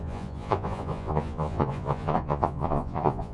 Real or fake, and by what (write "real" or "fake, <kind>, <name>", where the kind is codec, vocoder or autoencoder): fake, vocoder, Vocos